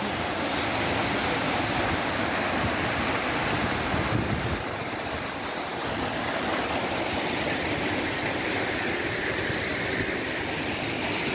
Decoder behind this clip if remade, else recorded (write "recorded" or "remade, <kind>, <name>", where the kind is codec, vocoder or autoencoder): recorded